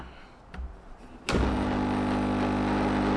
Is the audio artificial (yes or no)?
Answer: no